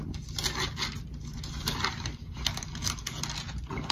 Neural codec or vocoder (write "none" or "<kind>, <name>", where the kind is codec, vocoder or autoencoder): none